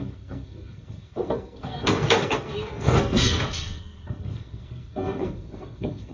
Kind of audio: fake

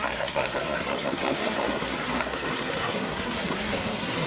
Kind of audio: fake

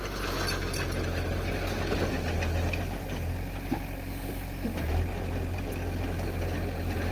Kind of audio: real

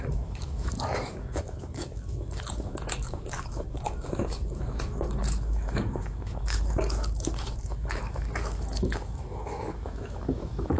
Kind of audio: fake